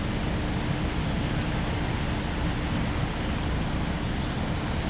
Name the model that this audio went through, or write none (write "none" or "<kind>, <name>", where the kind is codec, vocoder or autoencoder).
none